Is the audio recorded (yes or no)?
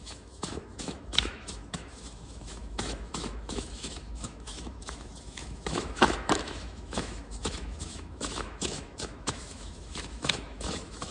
no